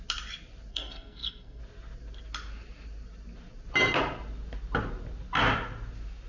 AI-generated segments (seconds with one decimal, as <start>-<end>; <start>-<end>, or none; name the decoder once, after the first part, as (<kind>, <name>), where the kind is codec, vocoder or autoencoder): 0.7-1.6 (codec, SNAC)